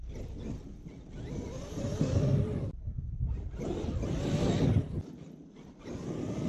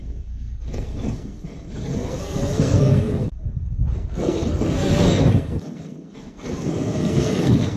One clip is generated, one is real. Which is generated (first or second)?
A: second